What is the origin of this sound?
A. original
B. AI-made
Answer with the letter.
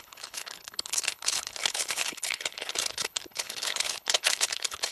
B